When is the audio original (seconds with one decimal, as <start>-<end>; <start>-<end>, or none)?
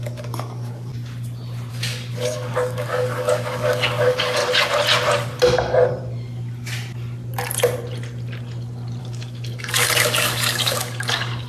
0.9-1.7; 4.4-9.0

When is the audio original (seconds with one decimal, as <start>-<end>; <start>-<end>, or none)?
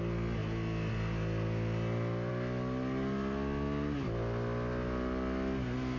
0.0-6.0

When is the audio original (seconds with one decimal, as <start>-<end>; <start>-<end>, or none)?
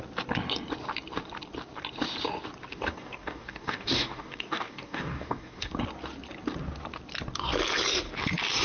0.0-2.7; 5.7-8.6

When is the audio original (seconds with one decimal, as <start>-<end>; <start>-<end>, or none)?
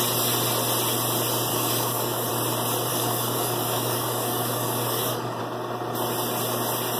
0.0-1.5; 2.3-2.9; 5.4-7.0